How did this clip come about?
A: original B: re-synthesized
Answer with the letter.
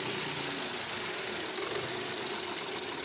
A